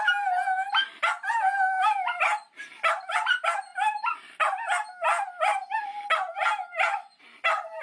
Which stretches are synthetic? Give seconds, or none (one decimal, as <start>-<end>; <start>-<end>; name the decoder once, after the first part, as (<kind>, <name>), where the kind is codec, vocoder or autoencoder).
none